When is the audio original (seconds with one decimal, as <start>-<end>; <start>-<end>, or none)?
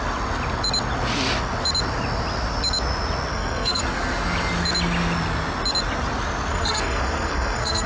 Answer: 0.0-3.3; 3.8-6.5